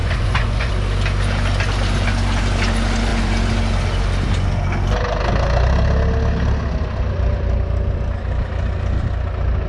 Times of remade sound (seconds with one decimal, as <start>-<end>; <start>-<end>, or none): 0.0-0.7